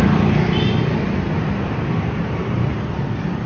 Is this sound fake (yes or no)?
no